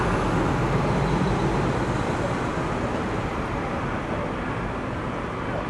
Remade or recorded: recorded